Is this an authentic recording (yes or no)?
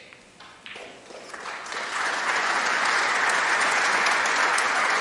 no